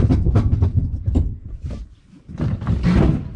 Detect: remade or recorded recorded